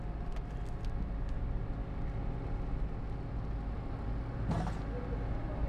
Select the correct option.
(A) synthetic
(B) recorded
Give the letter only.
B